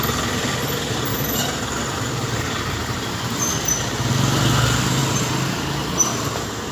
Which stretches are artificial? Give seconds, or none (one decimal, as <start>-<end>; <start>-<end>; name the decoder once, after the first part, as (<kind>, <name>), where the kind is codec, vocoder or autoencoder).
1.1-3.5 (vocoder, BigVGAN v2)